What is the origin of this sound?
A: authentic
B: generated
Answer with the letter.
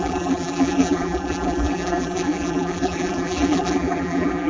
B